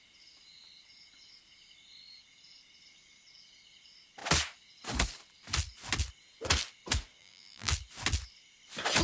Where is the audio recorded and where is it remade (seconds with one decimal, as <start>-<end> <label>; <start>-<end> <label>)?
0.0-7.2 recorded; 7.2-7.7 remade; 7.7-9.0 recorded